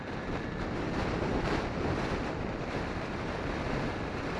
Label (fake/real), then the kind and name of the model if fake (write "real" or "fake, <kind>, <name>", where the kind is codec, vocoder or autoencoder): fake, vocoder, BigVGAN v2